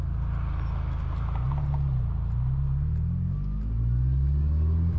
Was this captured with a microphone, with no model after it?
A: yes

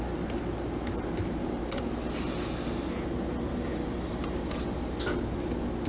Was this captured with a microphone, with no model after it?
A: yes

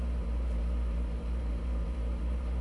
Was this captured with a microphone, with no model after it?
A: no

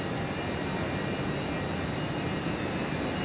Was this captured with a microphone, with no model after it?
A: yes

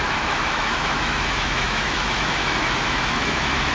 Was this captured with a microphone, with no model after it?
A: no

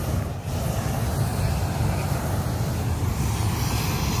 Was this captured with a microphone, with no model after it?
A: yes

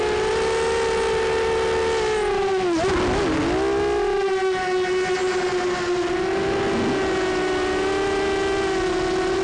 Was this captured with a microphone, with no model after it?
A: yes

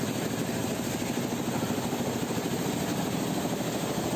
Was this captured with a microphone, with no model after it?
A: yes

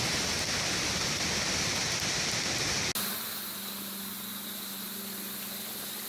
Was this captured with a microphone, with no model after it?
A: yes